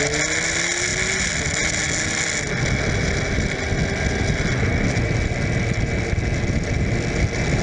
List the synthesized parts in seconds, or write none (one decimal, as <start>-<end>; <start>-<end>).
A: none